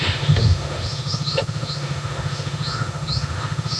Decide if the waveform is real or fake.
fake